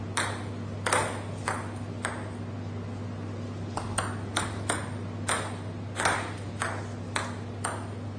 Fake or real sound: real